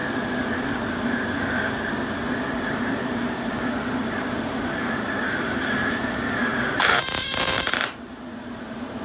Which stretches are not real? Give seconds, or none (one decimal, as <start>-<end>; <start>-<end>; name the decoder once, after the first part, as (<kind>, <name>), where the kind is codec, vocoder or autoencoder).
0.9-9.0 (vocoder, BigVGAN v2)